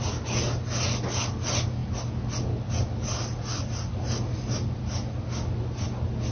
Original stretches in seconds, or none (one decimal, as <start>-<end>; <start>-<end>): 0.0-6.3